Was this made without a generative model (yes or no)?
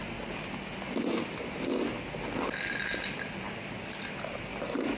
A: yes